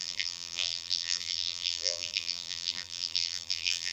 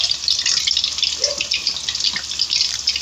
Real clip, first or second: second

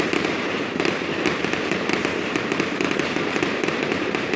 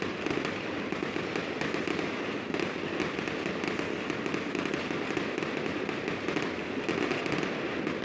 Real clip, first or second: second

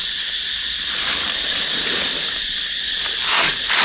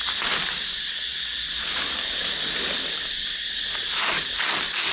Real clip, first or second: second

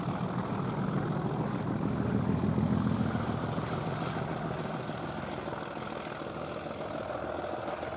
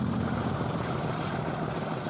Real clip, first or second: first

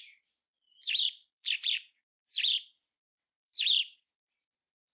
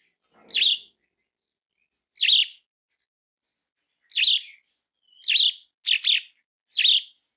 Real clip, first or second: second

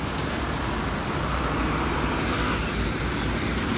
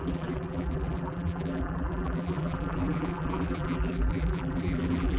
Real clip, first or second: first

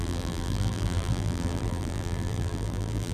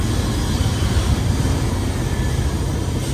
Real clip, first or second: second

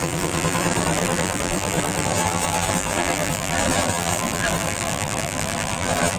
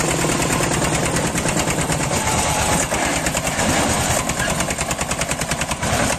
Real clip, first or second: second